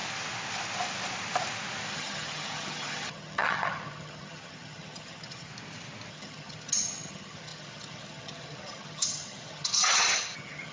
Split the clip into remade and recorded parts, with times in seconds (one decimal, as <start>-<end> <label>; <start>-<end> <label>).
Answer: 0.0-1.9 recorded; 1.9-5.5 remade; 5.5-6.1 recorded; 6.1-10.7 remade